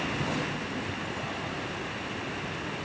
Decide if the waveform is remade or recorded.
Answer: recorded